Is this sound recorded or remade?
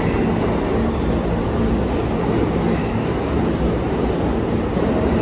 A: recorded